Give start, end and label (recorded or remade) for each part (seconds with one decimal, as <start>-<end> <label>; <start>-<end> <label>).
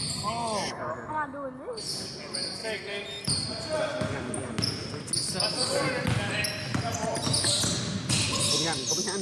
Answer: 0.0-9.2 recorded